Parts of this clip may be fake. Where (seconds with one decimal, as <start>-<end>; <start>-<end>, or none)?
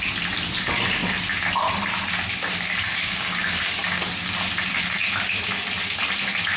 2.5-4.0